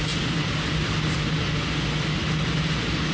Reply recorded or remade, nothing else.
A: recorded